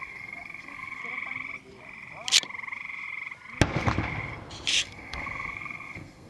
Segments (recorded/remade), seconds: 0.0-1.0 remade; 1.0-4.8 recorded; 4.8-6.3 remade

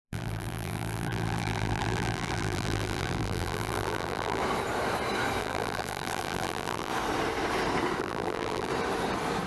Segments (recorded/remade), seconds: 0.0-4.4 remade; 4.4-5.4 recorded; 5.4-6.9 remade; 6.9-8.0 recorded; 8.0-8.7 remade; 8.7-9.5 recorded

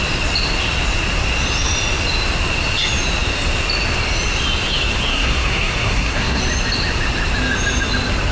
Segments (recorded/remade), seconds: 0.0-5.1 recorded; 5.1-6.4 remade; 6.4-8.3 recorded

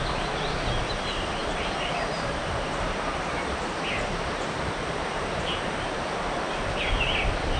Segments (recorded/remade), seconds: 0.0-1.4 recorded; 1.4-5.4 remade; 5.4-7.6 recorded